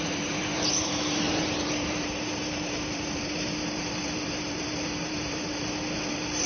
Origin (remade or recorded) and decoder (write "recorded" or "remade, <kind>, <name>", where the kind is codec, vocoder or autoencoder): remade, vocoder, BigVGAN v2